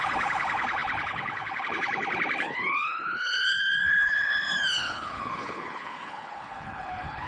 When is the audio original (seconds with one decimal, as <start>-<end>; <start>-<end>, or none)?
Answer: none